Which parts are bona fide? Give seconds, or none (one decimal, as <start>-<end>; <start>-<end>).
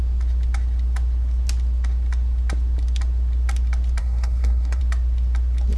0.0-4.0; 4.8-5.8